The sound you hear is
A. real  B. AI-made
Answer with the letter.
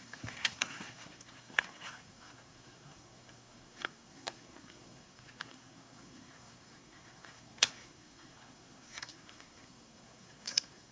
B